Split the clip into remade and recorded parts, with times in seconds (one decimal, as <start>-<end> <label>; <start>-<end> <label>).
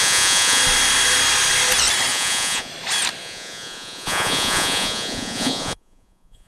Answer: 0.0-0.6 remade; 0.6-2.1 recorded; 2.1-2.7 remade; 2.7-3.2 recorded; 3.2-6.5 remade